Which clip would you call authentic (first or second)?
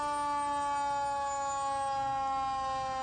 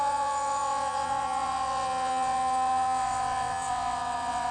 first